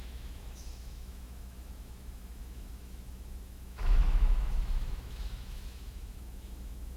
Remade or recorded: remade